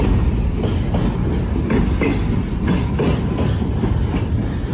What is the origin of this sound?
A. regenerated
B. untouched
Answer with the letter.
B